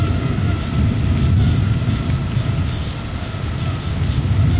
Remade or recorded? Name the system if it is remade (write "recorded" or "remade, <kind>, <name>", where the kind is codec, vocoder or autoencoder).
recorded